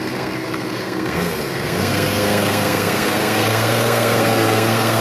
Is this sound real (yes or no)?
no